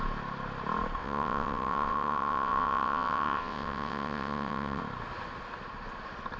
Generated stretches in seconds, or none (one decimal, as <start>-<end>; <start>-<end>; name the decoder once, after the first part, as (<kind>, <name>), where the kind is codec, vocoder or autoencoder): 1.0-4.8 (vocoder, WaveNeXt)